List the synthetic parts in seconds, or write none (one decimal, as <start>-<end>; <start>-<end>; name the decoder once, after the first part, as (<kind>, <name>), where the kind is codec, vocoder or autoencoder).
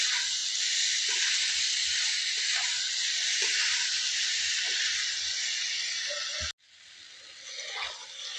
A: none